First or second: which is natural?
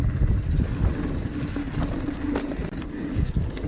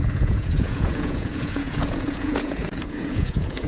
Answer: first